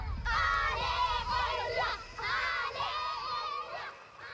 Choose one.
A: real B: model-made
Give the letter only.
A